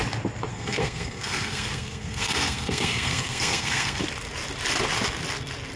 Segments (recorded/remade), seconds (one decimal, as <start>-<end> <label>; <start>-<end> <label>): 0.0-0.5 recorded; 0.5-4.0 remade; 4.0-5.8 recorded